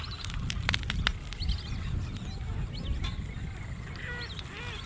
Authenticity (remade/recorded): recorded